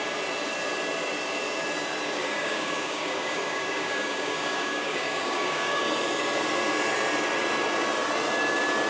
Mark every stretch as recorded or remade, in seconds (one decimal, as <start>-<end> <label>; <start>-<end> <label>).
0.0-2.2 recorded; 2.2-5.8 remade; 5.8-8.9 recorded